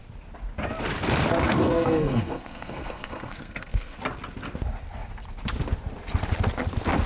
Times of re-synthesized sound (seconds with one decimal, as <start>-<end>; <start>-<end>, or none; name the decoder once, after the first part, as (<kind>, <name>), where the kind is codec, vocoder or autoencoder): 1.4-4.0 (codec, SNAC)